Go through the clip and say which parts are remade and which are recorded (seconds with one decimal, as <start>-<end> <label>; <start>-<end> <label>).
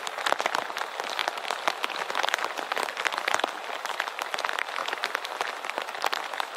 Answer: 0.0-6.6 recorded